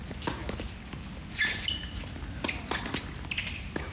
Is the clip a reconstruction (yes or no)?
no